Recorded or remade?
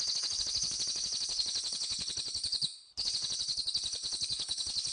remade